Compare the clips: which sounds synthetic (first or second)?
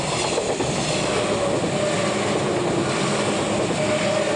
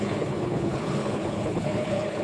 second